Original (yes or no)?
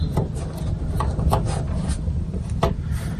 yes